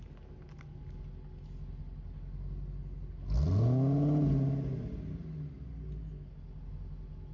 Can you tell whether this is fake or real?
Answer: real